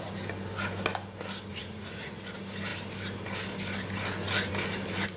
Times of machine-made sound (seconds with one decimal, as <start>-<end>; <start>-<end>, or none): 1.5-2.2